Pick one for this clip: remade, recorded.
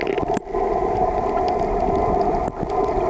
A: recorded